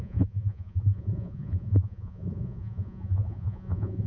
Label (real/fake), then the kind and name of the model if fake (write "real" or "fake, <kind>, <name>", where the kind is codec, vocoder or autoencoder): fake, vocoder, Vocos